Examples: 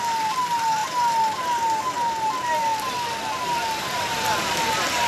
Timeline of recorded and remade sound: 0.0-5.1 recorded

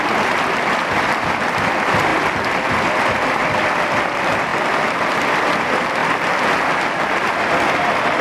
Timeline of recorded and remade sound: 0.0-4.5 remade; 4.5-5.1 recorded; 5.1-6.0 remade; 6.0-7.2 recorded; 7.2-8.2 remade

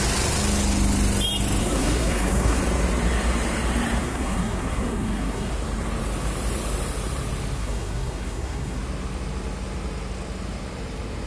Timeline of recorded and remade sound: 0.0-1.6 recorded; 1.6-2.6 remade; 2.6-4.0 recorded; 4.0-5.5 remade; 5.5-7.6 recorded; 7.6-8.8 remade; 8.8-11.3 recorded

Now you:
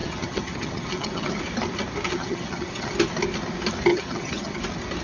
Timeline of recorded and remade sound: 0.0-1.4 remade; 1.4-2.1 recorded; 2.1-2.9 remade; 2.9-3.9 recorded; 3.9-4.6 remade; 4.6-5.0 recorded

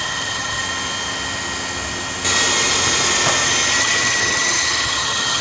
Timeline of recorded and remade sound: 0.0-0.6 remade; 0.6-3.8 recorded; 3.8-5.4 remade